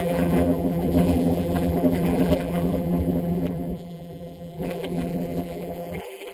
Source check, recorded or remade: remade